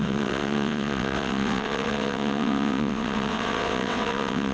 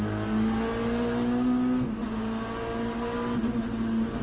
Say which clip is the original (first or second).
second